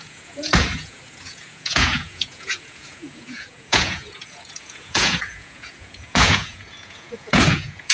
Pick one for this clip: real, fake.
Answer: fake